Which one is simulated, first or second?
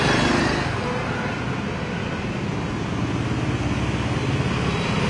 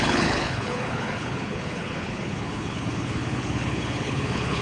second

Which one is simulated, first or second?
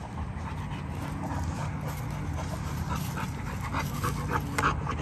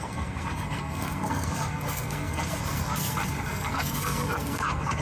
second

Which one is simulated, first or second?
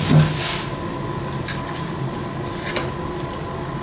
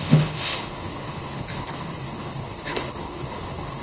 second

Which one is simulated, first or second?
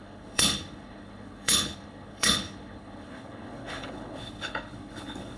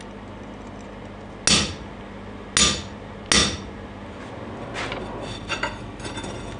first